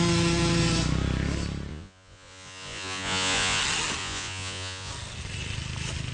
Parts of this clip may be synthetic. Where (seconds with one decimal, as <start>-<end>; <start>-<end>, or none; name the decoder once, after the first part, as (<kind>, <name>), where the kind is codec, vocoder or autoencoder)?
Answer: 1.7-3.6 (vocoder, Vocos); 4.0-4.9